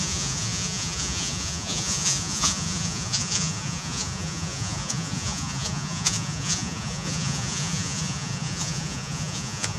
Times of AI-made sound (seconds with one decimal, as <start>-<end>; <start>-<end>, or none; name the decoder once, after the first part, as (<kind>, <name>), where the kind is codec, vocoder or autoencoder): 0.0-9.8 (vocoder, Vocos)